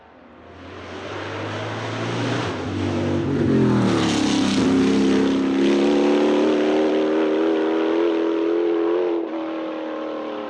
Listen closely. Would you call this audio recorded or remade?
recorded